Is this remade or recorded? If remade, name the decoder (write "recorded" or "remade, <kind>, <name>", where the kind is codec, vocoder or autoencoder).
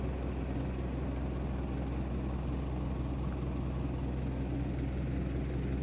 recorded